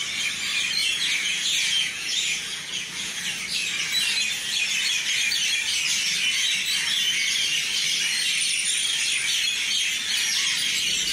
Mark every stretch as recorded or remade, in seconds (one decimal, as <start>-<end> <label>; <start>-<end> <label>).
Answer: 0.0-0.8 recorded; 0.8-3.2 remade; 3.2-11.1 recorded